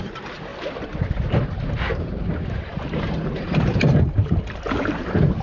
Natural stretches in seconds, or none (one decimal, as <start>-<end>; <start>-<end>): 0.5-1.7